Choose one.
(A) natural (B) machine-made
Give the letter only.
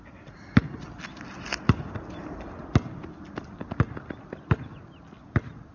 A